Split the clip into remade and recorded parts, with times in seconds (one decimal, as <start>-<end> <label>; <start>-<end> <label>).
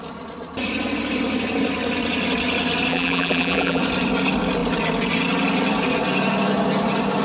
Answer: 0.0-2.9 recorded; 2.9-3.8 remade; 3.8-7.2 recorded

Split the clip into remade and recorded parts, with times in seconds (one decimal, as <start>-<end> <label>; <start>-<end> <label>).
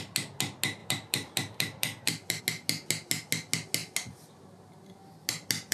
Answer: 0.0-0.8 recorded; 0.8-2.4 remade; 2.4-5.7 recorded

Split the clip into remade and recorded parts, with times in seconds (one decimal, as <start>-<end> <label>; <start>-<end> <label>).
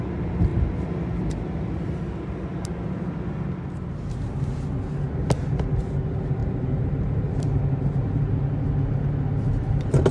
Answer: 0.0-6.4 recorded; 6.4-8.2 remade; 8.2-10.1 recorded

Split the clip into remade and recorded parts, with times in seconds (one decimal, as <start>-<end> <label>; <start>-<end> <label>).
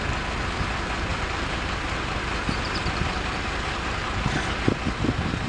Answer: 0.0-1.1 recorded; 1.1-4.4 remade; 4.4-5.5 recorded